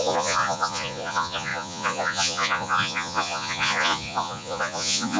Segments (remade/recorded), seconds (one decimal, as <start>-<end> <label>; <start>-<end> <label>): 0.0-5.2 remade